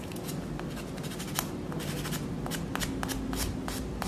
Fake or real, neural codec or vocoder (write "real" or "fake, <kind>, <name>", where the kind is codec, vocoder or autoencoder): real